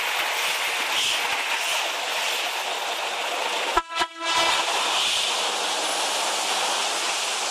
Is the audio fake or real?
real